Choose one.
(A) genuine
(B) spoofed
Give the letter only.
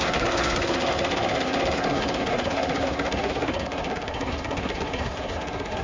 B